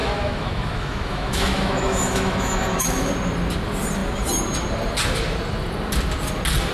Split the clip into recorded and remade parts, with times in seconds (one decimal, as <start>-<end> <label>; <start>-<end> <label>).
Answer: 0.0-3.1 remade; 3.1-6.7 recorded